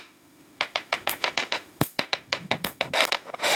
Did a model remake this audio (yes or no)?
yes